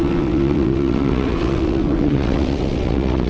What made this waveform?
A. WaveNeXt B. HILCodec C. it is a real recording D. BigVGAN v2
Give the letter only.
A